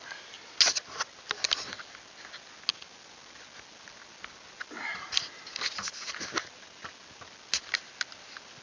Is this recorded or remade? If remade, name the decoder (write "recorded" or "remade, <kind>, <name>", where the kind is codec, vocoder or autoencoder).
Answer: recorded